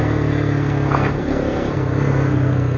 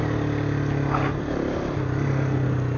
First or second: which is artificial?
first